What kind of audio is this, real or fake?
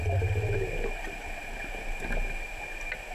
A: real